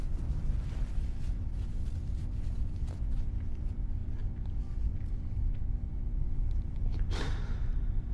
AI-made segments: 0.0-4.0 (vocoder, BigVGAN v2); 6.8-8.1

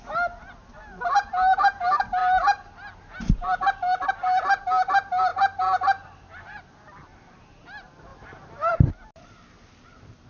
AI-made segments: none